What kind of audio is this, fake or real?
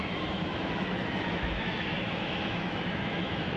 fake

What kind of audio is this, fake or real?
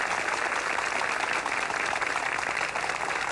real